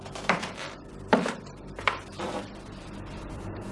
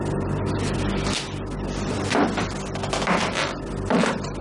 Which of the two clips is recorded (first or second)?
second